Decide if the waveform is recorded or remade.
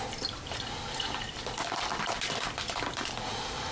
remade